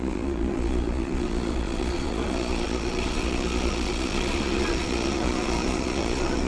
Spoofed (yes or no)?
yes